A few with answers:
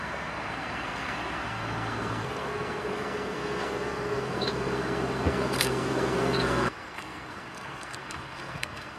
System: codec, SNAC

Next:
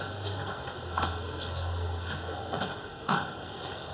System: codec, SNAC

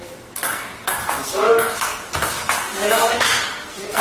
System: codec, SNAC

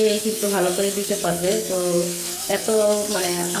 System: codec, SNAC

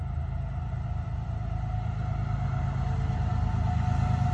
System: none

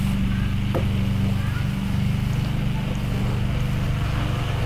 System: none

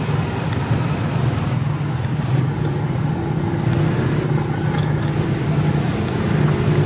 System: none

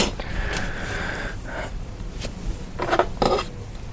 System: none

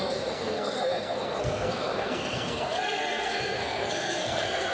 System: codec, SNAC